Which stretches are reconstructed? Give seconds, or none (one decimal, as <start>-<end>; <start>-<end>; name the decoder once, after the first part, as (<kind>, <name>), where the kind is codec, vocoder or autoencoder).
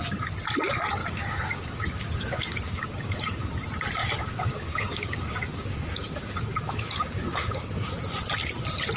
1.0-3.5 (codec, DAC); 4.0-7.9